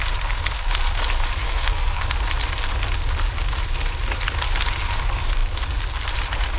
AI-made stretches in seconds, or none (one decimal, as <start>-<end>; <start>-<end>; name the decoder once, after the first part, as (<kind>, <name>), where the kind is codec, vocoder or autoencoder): 1.4-2.0 (codec, SNAC)

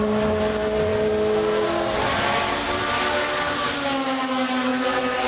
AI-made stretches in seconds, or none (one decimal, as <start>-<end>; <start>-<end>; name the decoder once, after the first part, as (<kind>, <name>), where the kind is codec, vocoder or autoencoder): none

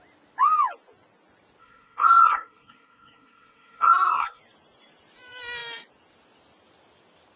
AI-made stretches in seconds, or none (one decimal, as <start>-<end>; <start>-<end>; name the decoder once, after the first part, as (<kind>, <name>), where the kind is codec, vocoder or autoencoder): 1.6-4.4 (codec, SNAC)

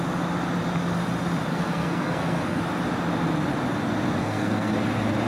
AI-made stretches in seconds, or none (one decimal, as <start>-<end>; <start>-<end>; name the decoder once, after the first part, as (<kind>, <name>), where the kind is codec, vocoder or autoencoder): 1.5-2.6 (codec, SNAC); 4.2-4.7

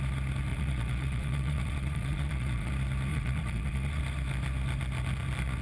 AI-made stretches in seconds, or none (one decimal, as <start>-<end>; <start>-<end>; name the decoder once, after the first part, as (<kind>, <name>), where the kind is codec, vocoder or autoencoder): 0.5-2.7 (vocoder, Vocos); 3.1-4.0

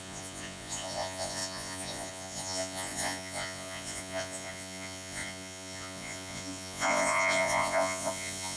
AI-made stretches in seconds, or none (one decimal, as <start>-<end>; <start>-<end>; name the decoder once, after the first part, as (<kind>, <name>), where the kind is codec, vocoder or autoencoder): 0.0-8.6 (vocoder, Vocos)